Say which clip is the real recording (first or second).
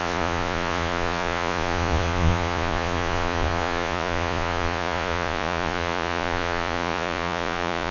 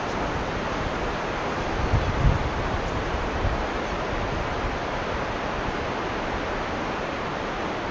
second